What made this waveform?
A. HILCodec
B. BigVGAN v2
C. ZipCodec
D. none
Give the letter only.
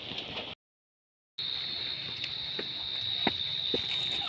D